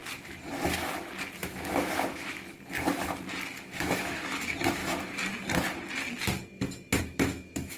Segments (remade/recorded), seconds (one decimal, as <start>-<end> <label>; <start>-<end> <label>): 0.0-1.4 recorded; 1.4-2.4 remade; 2.4-3.6 recorded; 3.6-4.8 remade; 4.8-7.0 recorded; 7.0-7.8 remade